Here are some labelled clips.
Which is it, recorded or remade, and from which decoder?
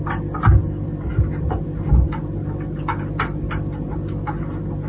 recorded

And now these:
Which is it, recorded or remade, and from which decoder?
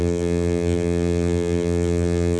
remade, vocoder, BigVGAN v2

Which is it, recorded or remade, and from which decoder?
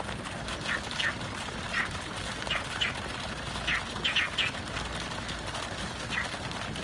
recorded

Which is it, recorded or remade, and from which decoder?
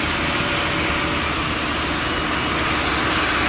recorded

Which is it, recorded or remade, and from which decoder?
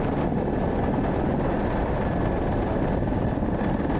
recorded